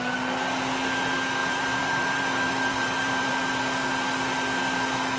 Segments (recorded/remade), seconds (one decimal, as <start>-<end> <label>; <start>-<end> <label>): 0.0-1.4 recorded; 1.4-3.3 remade; 3.3-5.2 recorded